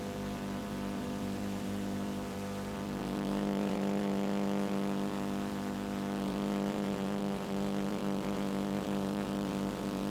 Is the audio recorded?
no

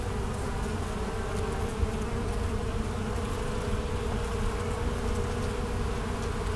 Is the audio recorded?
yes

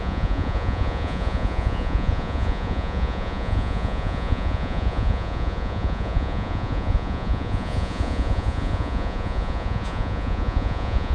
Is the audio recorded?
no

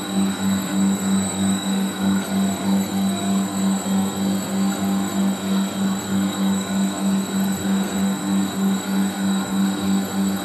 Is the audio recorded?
no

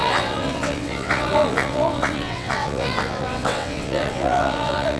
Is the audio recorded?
no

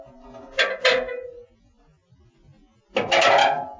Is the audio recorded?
yes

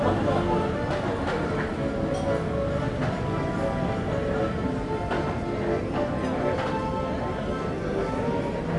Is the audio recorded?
yes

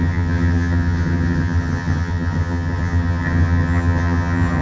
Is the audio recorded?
no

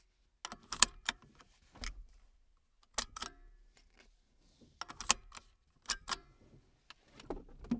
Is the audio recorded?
yes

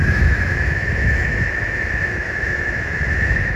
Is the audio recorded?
no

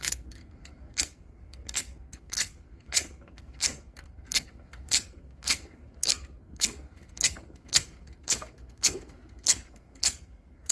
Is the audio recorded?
no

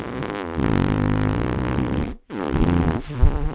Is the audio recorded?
yes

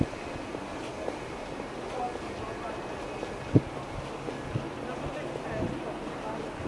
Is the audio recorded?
yes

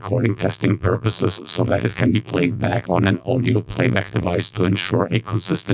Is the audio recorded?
no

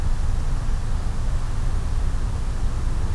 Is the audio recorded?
yes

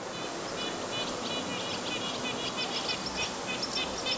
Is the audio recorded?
yes